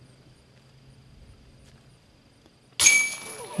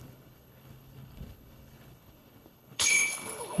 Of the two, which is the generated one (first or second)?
second